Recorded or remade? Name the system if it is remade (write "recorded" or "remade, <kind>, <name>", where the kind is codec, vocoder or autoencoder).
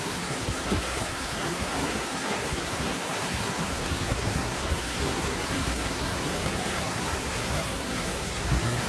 remade, codec, SNAC